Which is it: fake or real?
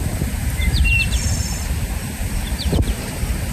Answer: fake